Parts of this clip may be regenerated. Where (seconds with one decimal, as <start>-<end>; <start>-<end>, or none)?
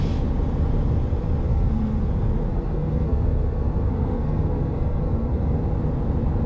1.5-2.0; 2.5-5.6